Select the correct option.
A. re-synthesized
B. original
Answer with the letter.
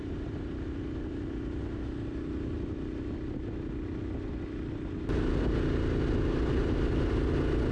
B